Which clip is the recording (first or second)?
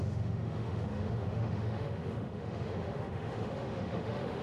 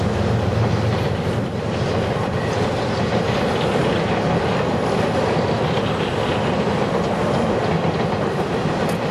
second